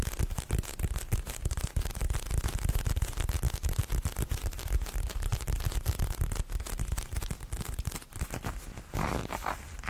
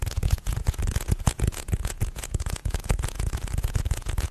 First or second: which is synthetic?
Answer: second